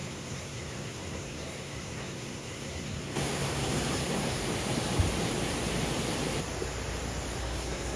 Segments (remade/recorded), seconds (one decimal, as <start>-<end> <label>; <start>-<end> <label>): 0.0-4.4 remade; 4.4-7.4 recorded; 7.4-8.0 remade